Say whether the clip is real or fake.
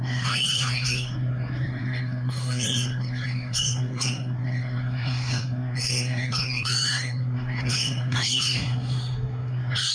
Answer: fake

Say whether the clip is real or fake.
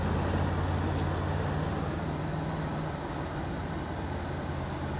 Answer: real